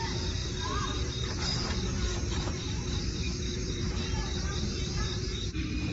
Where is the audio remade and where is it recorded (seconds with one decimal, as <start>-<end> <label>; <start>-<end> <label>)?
0.0-5.9 remade

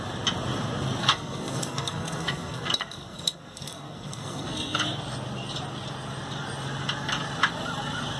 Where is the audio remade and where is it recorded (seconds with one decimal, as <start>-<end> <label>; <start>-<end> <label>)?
0.0-1.0 recorded; 1.0-4.8 remade; 4.8-8.2 recorded

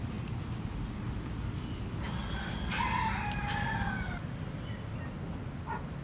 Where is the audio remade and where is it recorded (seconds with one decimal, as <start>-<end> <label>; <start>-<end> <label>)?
0.0-6.0 recorded

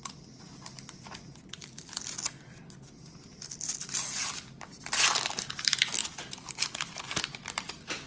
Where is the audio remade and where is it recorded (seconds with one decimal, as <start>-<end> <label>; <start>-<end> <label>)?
0.0-8.1 recorded